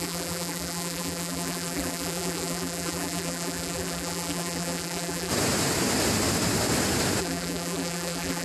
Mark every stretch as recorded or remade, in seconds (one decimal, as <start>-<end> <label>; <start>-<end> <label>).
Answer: 0.0-5.3 remade; 5.3-7.2 recorded; 7.2-8.4 remade